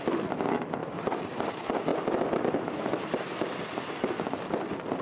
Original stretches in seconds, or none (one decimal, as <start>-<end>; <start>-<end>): 0.0-5.0